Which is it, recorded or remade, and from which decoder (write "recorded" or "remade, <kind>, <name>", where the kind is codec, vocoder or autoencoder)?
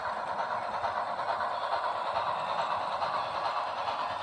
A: recorded